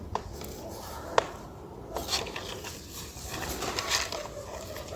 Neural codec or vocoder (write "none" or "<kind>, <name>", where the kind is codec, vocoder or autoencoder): none